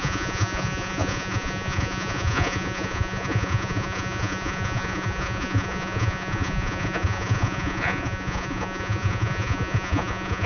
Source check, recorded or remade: remade